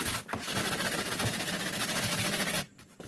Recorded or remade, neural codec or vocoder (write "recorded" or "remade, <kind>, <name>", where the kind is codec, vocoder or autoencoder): recorded